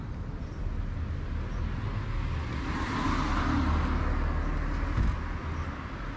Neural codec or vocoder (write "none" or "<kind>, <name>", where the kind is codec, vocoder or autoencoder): none